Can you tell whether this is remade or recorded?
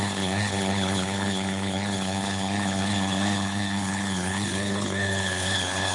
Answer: remade